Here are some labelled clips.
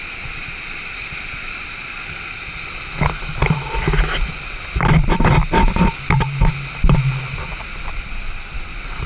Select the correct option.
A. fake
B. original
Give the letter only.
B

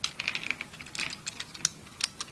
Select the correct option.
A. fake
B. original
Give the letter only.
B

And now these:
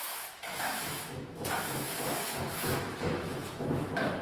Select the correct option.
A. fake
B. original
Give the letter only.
A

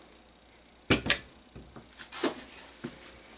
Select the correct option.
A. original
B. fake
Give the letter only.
A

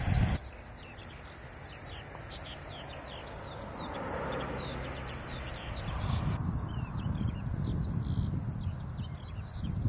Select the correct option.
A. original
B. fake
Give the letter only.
A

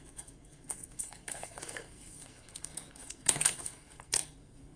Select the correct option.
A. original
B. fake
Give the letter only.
B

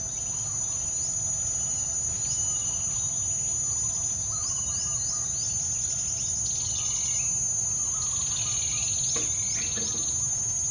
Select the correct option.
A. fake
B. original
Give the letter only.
B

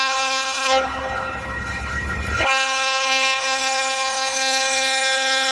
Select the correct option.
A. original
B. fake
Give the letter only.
B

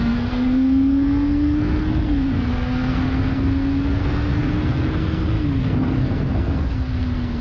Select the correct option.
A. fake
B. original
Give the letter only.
A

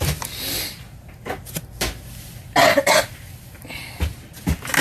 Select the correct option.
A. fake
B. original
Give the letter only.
B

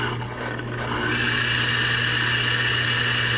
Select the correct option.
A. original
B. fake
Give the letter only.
A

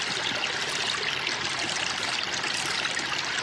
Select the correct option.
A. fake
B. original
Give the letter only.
B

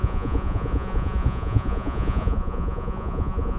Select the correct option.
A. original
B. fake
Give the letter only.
B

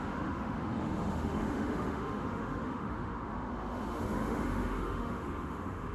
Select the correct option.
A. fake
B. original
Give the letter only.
A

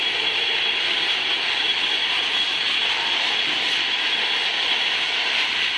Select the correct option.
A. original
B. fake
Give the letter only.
A